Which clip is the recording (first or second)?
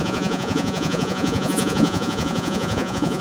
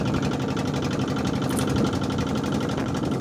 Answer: second